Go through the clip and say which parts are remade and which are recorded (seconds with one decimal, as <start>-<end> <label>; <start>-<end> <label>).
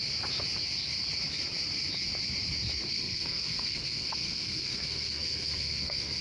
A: 0.0-2.9 recorded; 2.9-6.2 remade